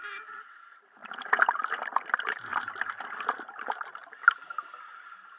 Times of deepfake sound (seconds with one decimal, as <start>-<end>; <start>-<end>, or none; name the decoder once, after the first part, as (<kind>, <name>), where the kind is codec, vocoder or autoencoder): 2.5-3.1 (vocoder, BigVGAN v2)